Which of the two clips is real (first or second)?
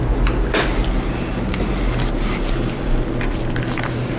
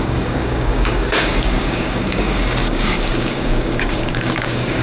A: first